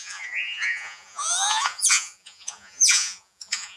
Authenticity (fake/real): fake